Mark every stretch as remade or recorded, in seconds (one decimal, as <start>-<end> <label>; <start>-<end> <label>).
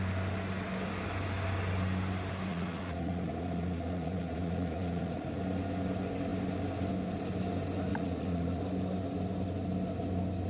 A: 0.0-2.5 recorded; 2.5-5.4 remade; 5.4-7.9 recorded; 7.9-8.6 remade; 8.6-10.5 recorded